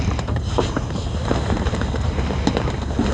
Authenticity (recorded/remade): remade